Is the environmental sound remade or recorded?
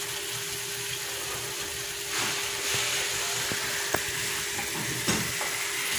recorded